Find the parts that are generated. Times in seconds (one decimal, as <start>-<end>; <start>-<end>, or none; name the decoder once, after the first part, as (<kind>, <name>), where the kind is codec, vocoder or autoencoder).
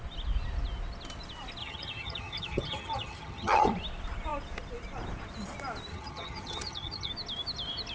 1.6-3.7 (vocoder, HiFi-GAN); 5.9-7.1